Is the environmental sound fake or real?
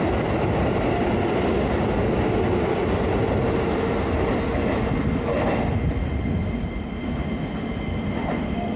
real